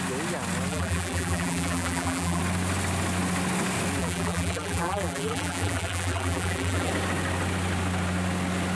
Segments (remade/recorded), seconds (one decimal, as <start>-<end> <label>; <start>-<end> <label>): 0.0-0.7 recorded; 0.7-2.4 remade; 2.4-4.0 recorded; 4.0-6.9 remade; 6.9-8.7 recorded